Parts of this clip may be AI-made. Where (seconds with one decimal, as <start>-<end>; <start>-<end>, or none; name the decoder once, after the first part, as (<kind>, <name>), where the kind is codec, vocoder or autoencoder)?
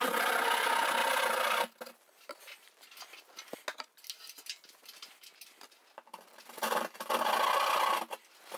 none